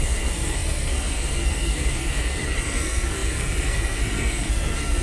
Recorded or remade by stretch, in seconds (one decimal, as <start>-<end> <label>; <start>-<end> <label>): 0.0-5.0 remade